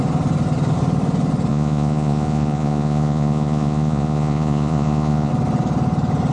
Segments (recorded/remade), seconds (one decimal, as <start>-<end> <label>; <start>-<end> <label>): 0.0-1.5 recorded; 1.5-5.3 remade; 5.3-6.3 recorded